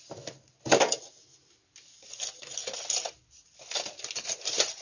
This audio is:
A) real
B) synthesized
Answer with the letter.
A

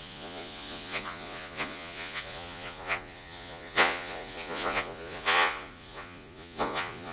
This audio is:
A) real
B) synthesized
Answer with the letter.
B